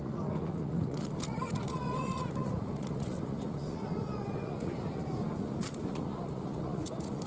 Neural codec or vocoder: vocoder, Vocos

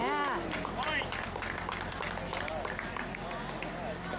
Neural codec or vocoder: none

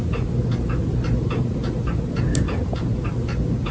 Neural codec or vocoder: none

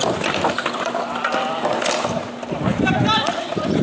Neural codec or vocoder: none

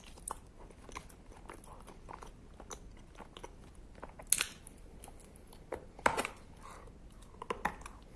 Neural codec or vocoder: none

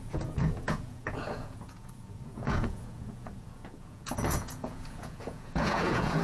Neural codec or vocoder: vocoder, Vocos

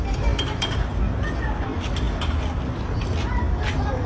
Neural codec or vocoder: none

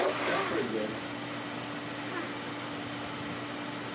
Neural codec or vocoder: none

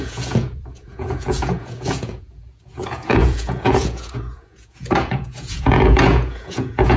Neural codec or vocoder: vocoder, Vocos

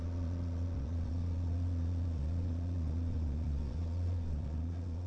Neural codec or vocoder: vocoder, Vocos